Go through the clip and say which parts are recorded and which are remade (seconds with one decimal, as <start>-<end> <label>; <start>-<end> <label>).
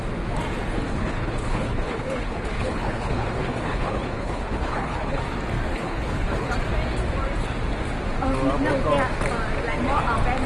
0.0-0.9 recorded; 0.9-5.2 remade; 5.2-5.7 recorded; 5.7-6.5 remade; 6.5-10.5 recorded